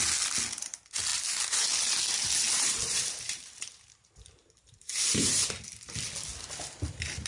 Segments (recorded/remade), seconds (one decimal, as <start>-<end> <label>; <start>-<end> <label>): 0.0-1.1 recorded; 1.1-5.5 remade; 5.5-7.3 recorded